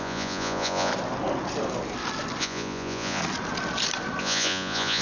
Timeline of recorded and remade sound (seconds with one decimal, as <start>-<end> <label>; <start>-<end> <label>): 0.0-0.9 remade; 0.9-2.4 recorded; 2.4-3.2 remade; 3.2-4.2 recorded; 4.2-5.0 remade